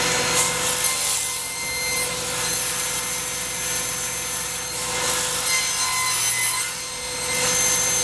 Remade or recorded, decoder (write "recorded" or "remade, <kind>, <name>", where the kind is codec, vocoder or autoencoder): recorded